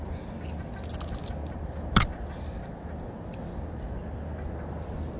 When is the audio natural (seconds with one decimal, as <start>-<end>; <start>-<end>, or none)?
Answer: 0.0-5.2

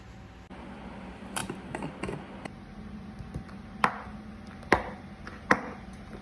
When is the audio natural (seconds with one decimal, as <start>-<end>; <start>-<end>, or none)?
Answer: 0.0-6.2

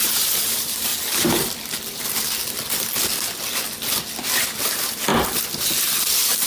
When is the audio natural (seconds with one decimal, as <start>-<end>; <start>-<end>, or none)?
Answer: 0.9-4.4; 5.1-6.1